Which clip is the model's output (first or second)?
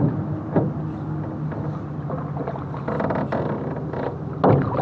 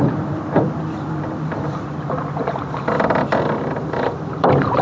second